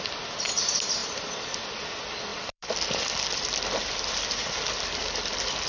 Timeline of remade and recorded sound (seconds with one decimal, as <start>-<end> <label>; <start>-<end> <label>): 0.0-1.0 recorded; 1.0-1.9 remade; 1.9-2.3 recorded; 2.3-4.7 remade; 4.7-5.7 recorded